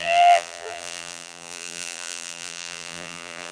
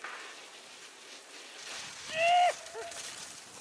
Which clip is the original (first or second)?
second